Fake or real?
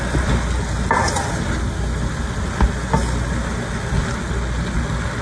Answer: real